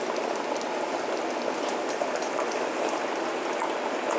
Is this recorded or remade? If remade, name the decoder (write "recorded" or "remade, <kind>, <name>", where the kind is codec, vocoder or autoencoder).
recorded